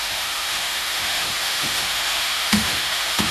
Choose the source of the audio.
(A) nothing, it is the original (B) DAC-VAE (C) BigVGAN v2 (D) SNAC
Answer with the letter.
B